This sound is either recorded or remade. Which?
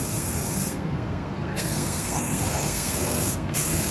remade